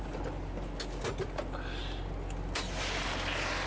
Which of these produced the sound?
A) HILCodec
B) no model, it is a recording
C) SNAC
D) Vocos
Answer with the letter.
B